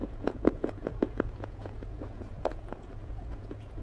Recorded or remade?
remade